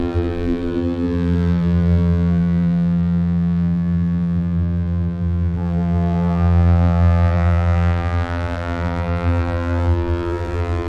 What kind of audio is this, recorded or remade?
remade